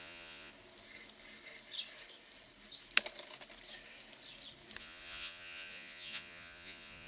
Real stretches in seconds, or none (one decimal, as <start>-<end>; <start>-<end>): 0.5-4.8